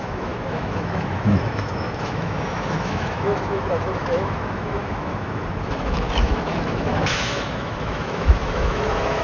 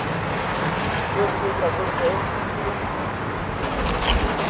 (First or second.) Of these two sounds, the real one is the second